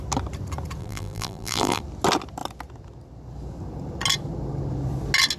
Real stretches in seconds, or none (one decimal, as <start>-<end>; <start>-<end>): 0.0-0.8; 1.8-5.4